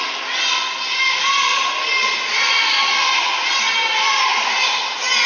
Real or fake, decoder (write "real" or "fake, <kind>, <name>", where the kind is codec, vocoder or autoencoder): real